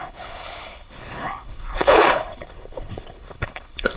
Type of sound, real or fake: fake